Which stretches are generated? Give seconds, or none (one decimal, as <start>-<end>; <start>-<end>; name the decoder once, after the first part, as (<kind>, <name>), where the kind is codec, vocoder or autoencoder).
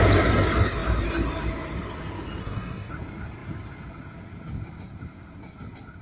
2.4-2.9 (codec, SNAC)